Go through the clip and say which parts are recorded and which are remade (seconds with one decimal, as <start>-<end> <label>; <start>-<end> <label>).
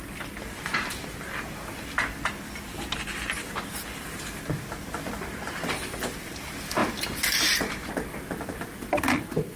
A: 0.0-9.6 recorded